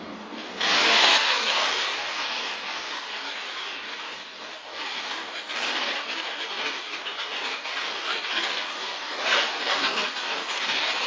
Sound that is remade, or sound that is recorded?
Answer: remade